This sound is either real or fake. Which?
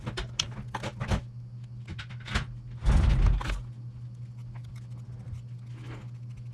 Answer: real